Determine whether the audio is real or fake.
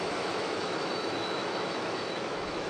fake